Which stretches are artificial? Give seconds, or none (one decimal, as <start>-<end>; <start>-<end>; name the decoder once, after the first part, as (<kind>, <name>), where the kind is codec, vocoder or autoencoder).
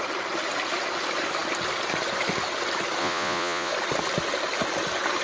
3.0-3.7 (vocoder, Vocos)